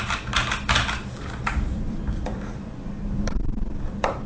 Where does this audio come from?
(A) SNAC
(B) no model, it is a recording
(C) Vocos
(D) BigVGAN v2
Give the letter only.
D